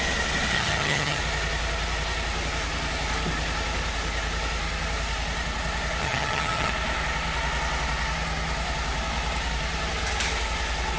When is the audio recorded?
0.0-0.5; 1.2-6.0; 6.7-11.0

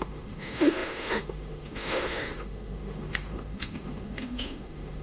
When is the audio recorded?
none

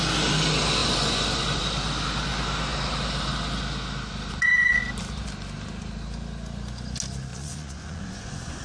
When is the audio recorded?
0.0-0.8; 1.6-7.3

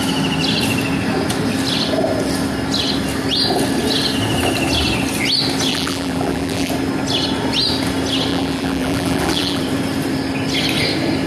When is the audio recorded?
0.0-5.7; 6.7-8.3; 9.6-11.3

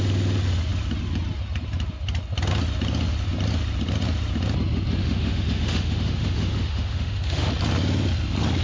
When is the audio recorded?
0.0-5.0; 7.5-8.6

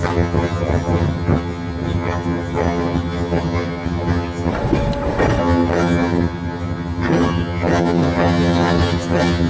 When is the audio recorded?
4.5-5.4

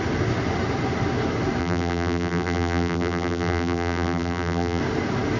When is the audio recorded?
0.0-1.6; 4.8-5.4

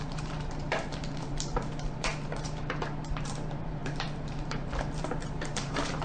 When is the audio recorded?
none